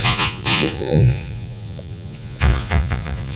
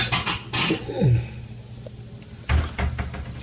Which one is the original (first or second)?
second